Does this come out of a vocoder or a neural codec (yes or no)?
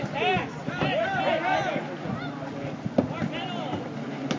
no